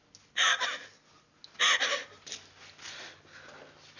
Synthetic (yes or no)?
no